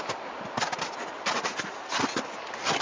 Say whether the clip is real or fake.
real